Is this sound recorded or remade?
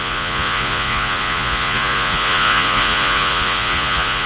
remade